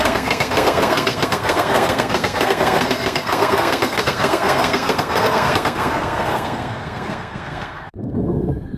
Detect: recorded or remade remade